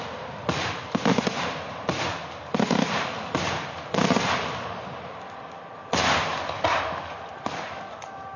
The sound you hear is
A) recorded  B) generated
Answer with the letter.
A